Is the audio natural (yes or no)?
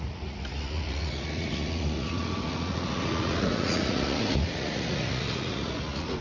no